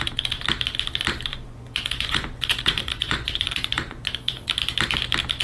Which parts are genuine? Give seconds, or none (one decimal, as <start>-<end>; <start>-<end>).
0.0-1.3; 4.5-5.4